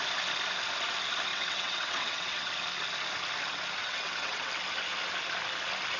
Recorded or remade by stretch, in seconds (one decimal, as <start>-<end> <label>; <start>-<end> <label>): 0.0-1.3 recorded; 1.3-2.5 remade; 2.5-3.8 recorded; 3.8-4.5 remade; 4.5-6.0 recorded